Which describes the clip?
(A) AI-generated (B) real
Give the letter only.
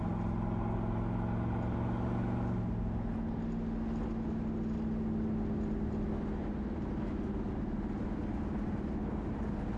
B